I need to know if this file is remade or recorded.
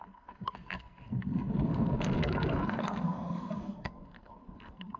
remade